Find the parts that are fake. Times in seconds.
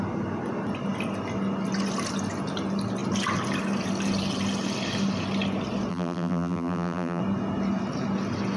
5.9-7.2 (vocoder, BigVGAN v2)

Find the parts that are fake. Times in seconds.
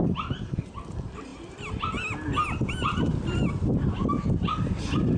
none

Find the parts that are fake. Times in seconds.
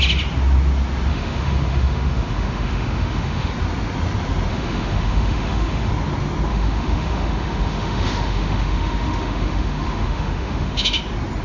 1.1-3.5 (autoencoder, DAC-VAE); 4.5-5.9; 6.5-11.0